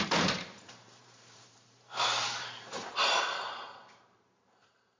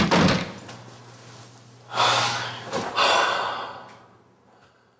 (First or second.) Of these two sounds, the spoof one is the first